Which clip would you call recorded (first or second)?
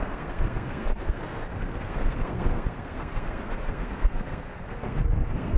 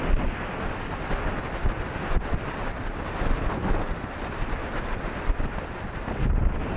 second